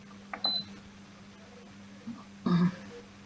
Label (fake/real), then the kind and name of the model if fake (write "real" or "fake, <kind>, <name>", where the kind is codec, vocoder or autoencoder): real